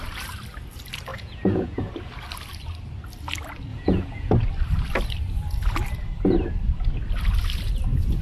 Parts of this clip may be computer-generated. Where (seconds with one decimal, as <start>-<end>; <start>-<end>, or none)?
1.1-1.9; 3.7-4.3